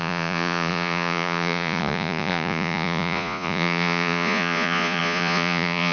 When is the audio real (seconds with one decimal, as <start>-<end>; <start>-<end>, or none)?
none